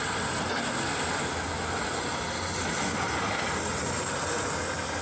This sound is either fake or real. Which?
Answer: real